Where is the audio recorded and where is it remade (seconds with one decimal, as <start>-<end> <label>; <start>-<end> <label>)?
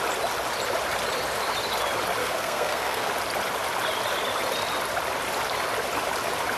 0.0-2.2 recorded; 2.2-3.1 remade; 3.1-6.6 recorded